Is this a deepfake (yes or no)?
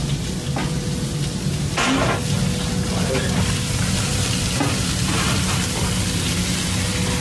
no